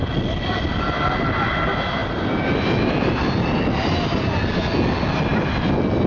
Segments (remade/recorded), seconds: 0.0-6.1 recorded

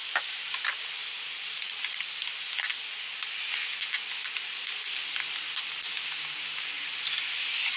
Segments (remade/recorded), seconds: 0.0-0.6 remade; 0.6-1.0 recorded; 1.0-2.1 remade; 2.1-7.8 recorded